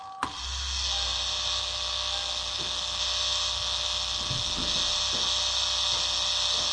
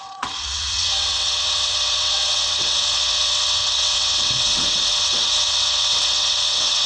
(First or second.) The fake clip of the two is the second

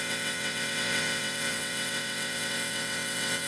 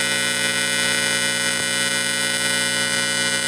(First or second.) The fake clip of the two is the first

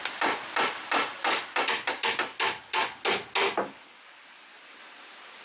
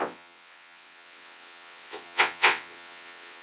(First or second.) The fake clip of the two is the second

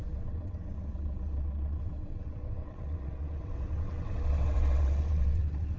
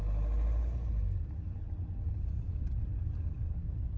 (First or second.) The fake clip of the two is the first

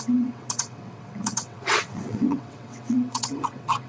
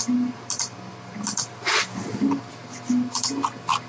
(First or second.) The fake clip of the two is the first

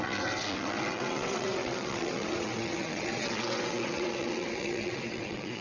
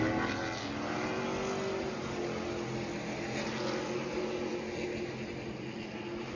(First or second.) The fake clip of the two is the first